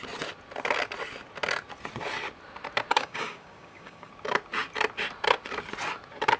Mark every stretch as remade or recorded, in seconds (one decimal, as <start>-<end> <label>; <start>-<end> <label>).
0.0-2.9 recorded; 2.9-4.1 remade; 4.1-6.4 recorded